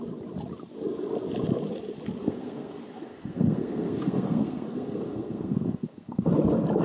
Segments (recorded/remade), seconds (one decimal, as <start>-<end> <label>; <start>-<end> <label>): 0.0-2.2 recorded; 2.2-6.3 remade; 6.3-6.8 recorded